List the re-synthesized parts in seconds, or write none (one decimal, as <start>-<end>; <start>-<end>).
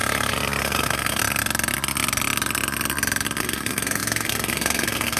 0.6-1.2; 3.4-5.2